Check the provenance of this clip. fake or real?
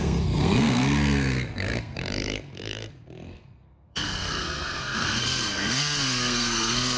fake